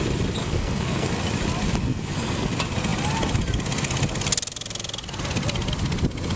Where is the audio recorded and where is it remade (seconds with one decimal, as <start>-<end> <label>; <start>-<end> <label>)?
0.0-0.4 recorded; 0.4-1.1 remade; 1.1-1.9 recorded; 1.9-2.5 remade; 2.5-6.4 recorded